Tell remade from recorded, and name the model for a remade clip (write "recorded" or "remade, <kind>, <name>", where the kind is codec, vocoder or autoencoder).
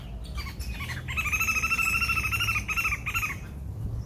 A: recorded